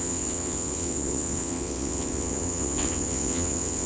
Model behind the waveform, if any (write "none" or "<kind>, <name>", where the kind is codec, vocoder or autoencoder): vocoder, WaveNeXt